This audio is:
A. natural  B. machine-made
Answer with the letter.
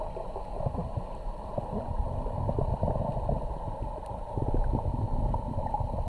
A